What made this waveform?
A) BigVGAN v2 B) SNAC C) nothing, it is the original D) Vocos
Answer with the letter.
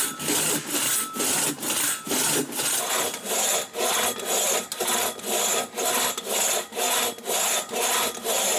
C